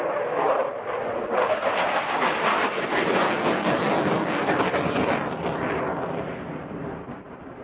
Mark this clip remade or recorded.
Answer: recorded